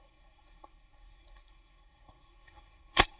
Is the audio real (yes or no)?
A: no